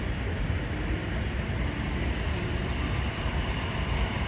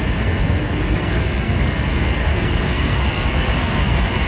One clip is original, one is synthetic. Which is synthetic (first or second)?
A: second